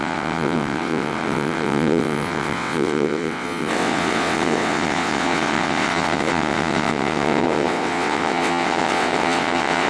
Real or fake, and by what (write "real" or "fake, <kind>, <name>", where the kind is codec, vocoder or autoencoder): fake, vocoder, WaveNeXt